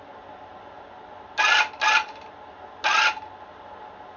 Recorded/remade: recorded